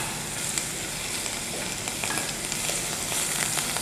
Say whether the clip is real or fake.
real